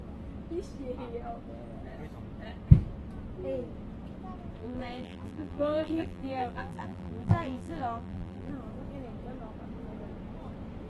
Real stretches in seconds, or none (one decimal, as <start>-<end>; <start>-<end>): 0.0-4.6; 8.5-10.9